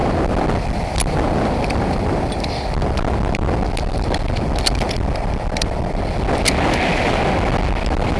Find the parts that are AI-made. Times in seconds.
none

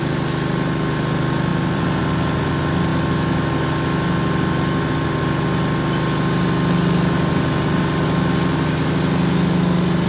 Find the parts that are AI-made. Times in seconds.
1.5-2.0